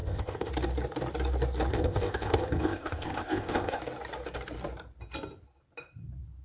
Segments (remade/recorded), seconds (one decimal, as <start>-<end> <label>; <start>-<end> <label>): 0.0-0.5 remade; 0.5-1.7 recorded; 1.7-3.8 remade; 3.8-6.4 recorded